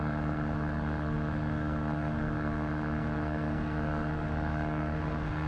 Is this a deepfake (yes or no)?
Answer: yes